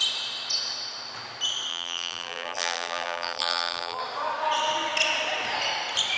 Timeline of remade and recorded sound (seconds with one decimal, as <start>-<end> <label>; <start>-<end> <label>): 0.0-1.7 recorded; 1.7-4.0 remade; 4.0-6.2 recorded